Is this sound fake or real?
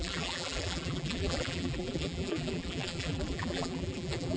fake